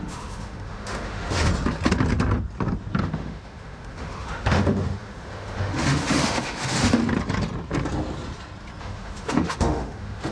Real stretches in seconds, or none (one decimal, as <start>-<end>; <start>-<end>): 1.5-3.0; 7.0-8.8